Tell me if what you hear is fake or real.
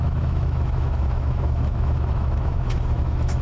fake